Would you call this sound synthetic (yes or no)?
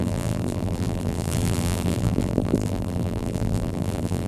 yes